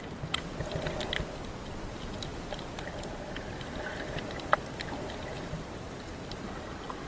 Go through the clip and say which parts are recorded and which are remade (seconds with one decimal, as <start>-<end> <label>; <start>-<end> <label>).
0.0-7.1 recorded